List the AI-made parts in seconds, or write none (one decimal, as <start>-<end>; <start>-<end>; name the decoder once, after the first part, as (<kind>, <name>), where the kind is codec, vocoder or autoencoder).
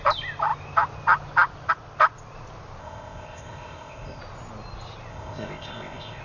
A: 2.8-4.2 (codec, ZipCodec); 5.1-6.2